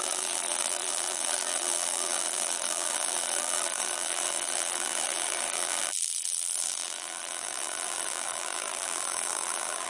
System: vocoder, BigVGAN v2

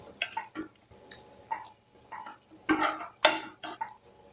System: none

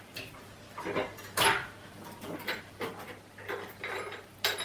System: none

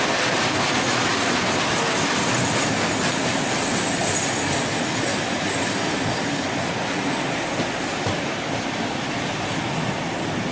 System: none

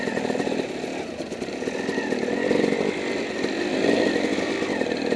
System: none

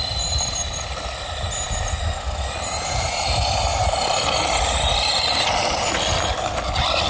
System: none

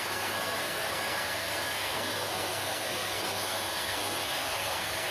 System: codec, SNAC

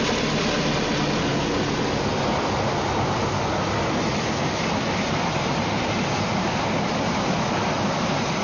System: none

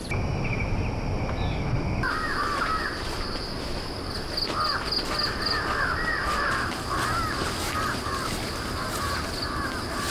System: none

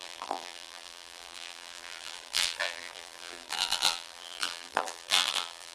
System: vocoder, BigVGAN v2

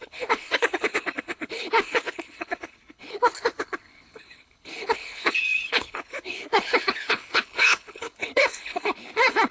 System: codec, HILCodec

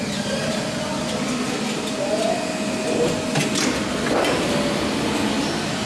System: none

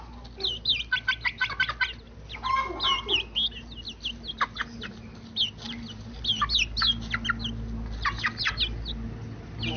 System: none